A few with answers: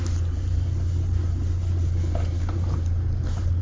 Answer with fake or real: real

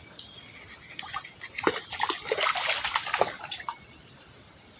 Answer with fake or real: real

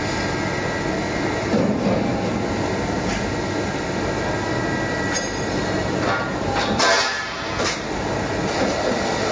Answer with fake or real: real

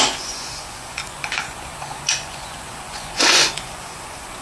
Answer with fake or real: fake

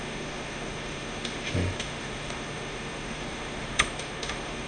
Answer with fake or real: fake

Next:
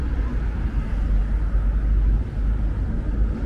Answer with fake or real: real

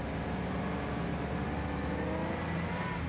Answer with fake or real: real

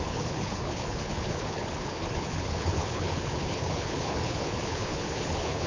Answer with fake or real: fake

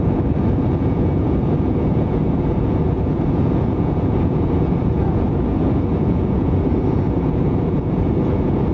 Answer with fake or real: fake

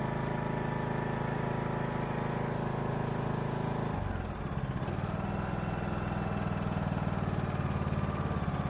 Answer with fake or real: real